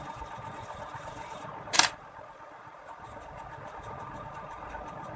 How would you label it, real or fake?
fake